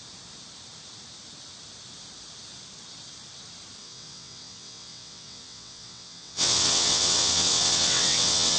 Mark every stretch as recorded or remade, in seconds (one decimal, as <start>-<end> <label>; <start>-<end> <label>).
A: 0.0-3.8 recorded; 3.8-8.6 remade